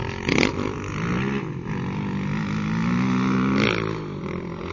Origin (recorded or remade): recorded